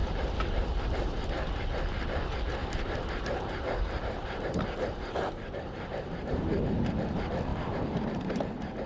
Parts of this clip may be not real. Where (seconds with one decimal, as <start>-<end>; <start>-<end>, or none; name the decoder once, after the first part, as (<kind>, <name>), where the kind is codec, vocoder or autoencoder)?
0.0-1.3 (vocoder, BigVGAN v2); 2.6-6.9; 7.5-8.4